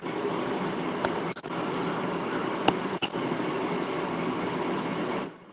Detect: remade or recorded recorded